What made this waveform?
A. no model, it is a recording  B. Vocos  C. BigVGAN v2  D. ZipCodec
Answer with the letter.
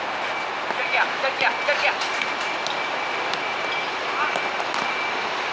A